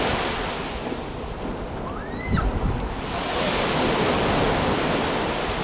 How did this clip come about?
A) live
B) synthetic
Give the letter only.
A